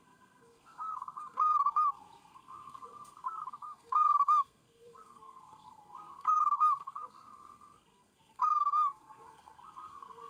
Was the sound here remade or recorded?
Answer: remade